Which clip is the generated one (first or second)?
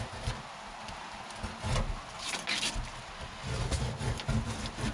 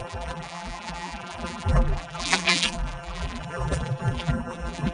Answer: second